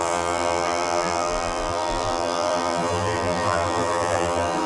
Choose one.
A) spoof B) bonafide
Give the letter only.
A